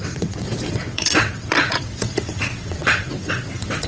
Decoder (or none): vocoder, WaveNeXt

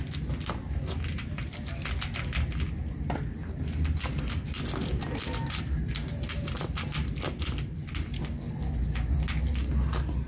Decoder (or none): none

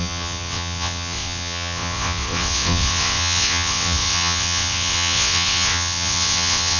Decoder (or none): vocoder, WaveNeXt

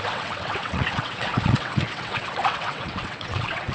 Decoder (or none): vocoder, WaveNeXt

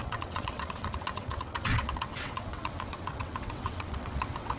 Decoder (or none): vocoder, WaveNeXt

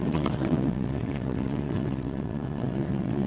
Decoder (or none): vocoder, WaveNeXt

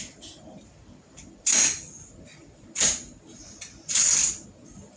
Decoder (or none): none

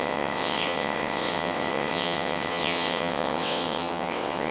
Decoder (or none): vocoder, WaveNeXt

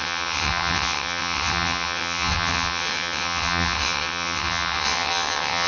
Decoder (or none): vocoder, WaveNeXt